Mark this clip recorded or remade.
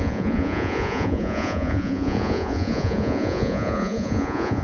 remade